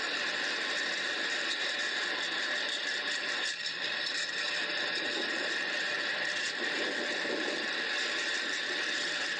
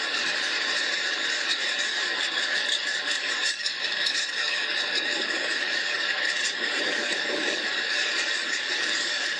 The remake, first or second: second